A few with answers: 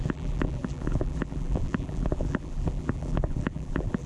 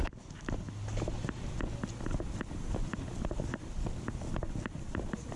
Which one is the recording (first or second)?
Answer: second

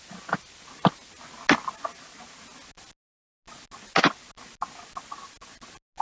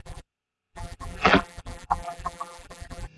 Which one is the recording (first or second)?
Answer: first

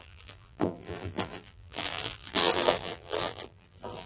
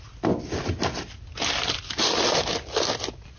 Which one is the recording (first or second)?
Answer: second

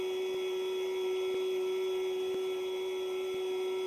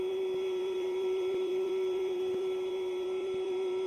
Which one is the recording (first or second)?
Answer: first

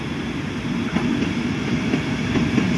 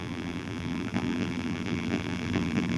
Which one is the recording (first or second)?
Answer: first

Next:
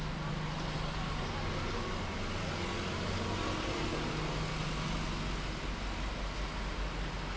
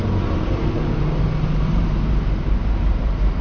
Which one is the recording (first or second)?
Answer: first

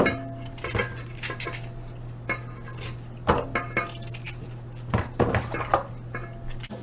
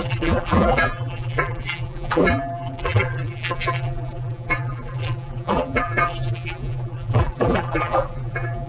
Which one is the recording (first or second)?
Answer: first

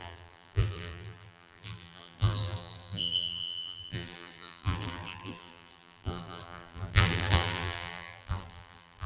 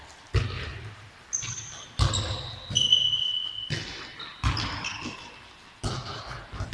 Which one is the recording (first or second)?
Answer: second